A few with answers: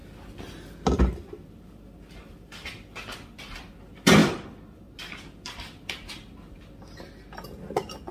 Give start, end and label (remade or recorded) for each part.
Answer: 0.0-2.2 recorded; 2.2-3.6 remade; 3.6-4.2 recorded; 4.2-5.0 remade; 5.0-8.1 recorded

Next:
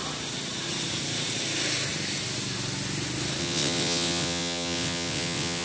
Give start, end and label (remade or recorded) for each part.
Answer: 0.0-3.4 recorded; 3.4-5.6 remade

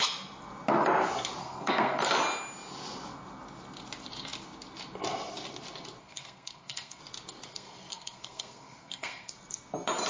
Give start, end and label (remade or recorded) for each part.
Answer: 0.0-1.4 recorded; 1.4-2.0 remade; 2.0-6.0 recorded; 6.0-7.0 remade; 7.0-7.5 recorded; 7.5-9.3 remade; 9.3-10.1 recorded

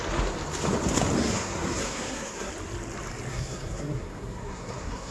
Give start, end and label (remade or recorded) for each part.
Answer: 0.0-1.2 recorded; 1.2-2.5 remade; 2.5-3.3 recorded; 3.3-5.1 remade

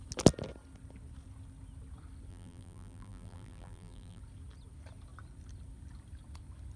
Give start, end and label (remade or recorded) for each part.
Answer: 0.0-2.3 recorded; 2.3-4.2 remade; 4.2-6.8 recorded